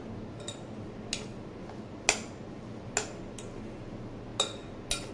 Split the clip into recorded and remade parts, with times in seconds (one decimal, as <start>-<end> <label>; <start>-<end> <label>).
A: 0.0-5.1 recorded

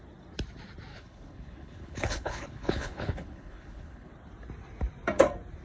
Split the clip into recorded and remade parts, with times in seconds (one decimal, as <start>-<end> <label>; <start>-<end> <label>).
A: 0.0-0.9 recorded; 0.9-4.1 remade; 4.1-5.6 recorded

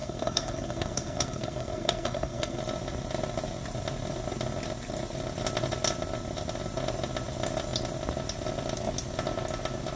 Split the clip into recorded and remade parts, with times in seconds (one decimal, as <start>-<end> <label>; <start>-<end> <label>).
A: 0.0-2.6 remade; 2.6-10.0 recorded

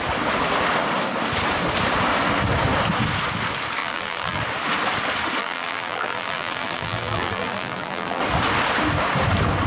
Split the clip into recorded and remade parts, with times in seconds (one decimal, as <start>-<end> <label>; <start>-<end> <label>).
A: 0.0-3.8 recorded; 3.8-4.4 remade; 4.4-5.4 recorded; 5.4-8.2 remade; 8.2-9.7 recorded

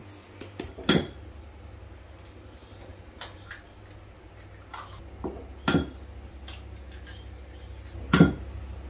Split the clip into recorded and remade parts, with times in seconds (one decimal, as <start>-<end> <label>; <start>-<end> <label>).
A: 0.0-2.9 recorded; 2.9-3.5 remade; 3.5-8.9 recorded

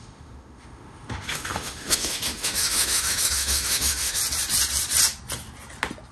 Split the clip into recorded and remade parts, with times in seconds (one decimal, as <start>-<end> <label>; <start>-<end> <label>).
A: 0.0-4.2 remade; 4.2-6.1 recorded

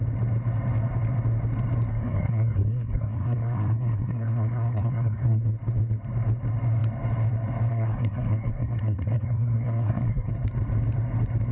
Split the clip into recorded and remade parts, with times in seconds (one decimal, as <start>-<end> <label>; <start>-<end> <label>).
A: 0.0-1.9 recorded; 1.9-5.4 remade; 5.4-7.7 recorded; 7.7-10.3 remade; 10.3-11.5 recorded

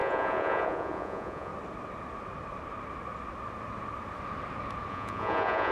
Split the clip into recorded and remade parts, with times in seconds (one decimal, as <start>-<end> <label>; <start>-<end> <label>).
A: 0.0-1.5 remade; 1.5-4.9 recorded; 4.9-5.7 remade